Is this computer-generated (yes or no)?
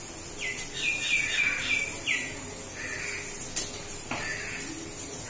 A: no